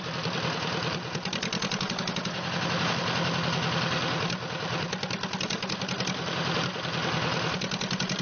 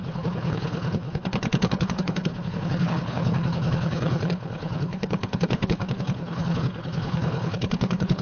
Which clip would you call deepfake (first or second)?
second